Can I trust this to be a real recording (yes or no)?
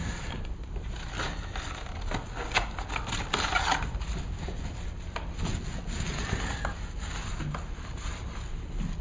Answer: yes